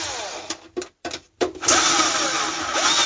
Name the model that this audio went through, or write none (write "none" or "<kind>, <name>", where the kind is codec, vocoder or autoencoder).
vocoder, BigVGAN v2